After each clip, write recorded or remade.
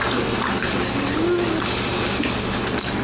recorded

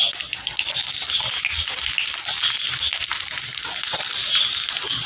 recorded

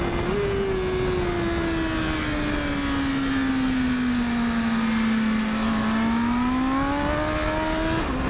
recorded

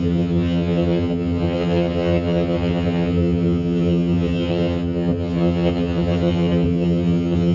remade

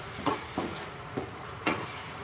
remade